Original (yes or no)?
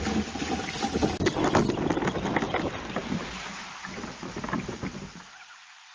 yes